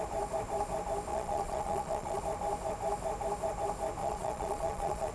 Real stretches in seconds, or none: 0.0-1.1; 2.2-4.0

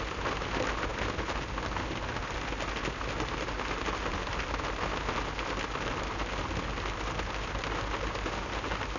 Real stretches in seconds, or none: 0.0-9.0

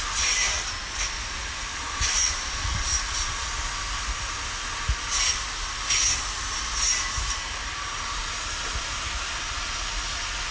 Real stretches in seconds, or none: 7.4-8.2

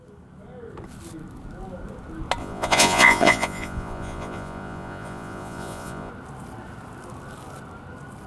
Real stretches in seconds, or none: 0.0-2.4; 6.1-8.3

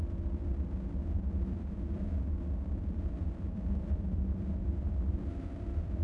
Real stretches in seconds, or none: 0.4-1.2

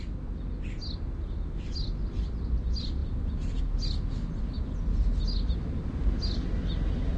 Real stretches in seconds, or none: 0.0-7.2

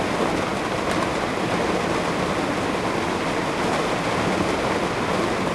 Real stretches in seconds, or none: 0.0-5.5